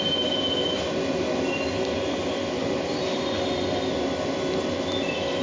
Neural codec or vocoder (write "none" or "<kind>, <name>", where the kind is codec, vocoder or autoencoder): none